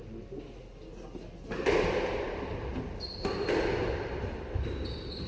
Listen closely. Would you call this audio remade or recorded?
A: recorded